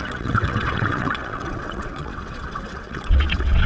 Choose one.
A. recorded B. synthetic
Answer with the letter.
B